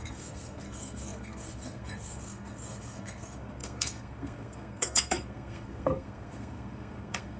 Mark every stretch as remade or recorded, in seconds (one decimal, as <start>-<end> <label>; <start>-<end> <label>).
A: 0.0-7.4 remade